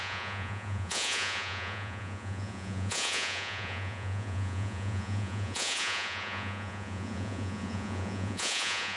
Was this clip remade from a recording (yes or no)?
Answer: yes